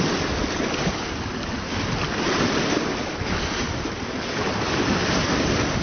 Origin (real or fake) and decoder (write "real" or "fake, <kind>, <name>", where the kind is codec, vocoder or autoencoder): real